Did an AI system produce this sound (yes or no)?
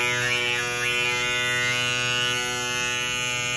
no